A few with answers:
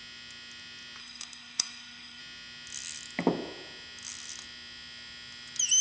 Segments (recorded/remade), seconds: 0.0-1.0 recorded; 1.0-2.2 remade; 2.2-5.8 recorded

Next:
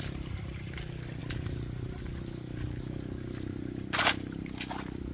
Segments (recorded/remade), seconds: 0.0-5.1 recorded

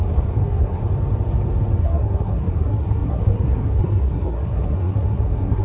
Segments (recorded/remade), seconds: 0.0-0.8 remade; 0.8-1.8 recorded; 1.8-5.6 remade

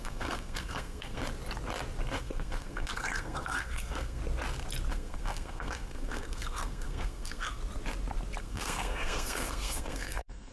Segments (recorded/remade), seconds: 0.0-1.2 remade; 1.2-2.2 recorded; 2.2-4.2 remade; 4.2-4.9 recorded; 4.9-7.6 remade; 7.6-8.4 recorded; 8.4-10.5 remade

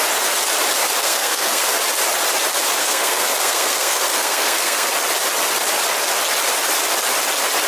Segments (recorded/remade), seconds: 0.0-1.0 recorded; 1.0-1.7 remade; 1.7-2.8 recorded; 2.8-4.9 remade; 4.9-7.7 recorded